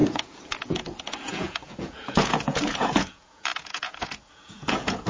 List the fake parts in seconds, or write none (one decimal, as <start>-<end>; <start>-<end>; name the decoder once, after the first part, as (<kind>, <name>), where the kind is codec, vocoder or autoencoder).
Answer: 0.0-5.1 (vocoder, Vocos)